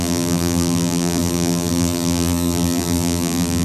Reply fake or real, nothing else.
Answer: fake